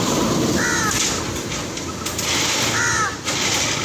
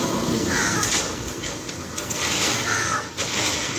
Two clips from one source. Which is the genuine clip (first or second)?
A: first